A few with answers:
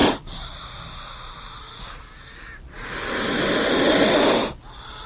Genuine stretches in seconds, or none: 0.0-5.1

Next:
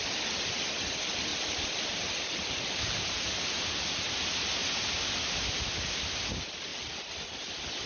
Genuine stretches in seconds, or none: 0.0-1.3; 3.4-7.9

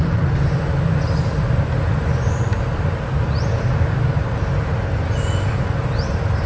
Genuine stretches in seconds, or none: 0.0-2.5; 5.5-6.5

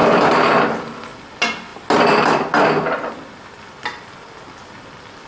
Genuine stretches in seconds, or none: 0.0-5.3